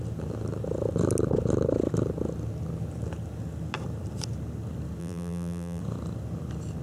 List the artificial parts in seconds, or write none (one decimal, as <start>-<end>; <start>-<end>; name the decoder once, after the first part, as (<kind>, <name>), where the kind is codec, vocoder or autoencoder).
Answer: 5.0-5.8 (vocoder, BigVGAN v2)